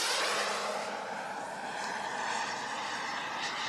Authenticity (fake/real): real